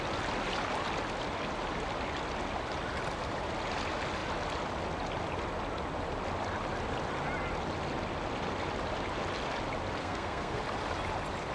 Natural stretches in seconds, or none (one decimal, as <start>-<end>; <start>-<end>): 0.0-10.0; 10.6-11.5